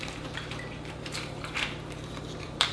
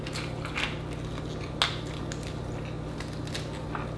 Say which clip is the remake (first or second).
first